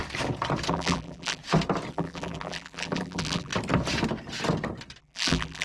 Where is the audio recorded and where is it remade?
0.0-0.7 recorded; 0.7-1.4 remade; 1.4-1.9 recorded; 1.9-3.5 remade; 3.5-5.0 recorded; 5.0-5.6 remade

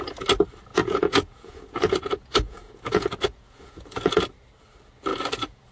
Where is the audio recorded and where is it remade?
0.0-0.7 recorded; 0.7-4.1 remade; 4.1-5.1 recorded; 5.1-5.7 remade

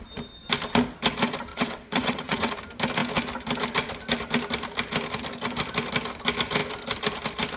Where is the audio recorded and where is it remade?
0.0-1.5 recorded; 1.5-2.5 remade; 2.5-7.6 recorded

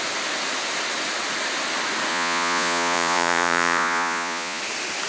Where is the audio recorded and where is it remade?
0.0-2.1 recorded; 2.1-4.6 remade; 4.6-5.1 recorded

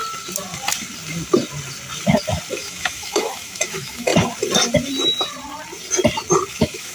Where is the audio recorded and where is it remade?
0.0-2.5 recorded; 2.5-4.1 remade; 4.1-6.5 recorded; 6.5-6.9 remade

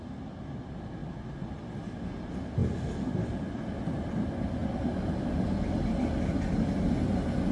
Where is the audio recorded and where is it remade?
0.0-7.5 recorded

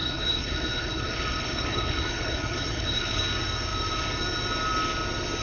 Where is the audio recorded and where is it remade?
0.0-3.2 remade; 3.2-5.4 recorded